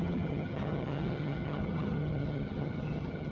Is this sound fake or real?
fake